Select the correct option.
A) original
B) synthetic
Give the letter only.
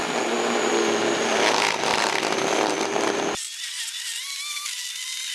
A